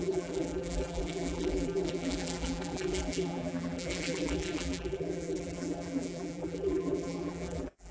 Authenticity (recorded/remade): remade